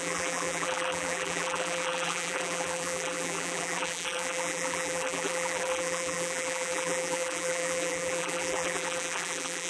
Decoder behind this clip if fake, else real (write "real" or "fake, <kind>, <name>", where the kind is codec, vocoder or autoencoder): fake, vocoder, BigVGAN v2